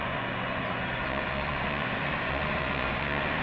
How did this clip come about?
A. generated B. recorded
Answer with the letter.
A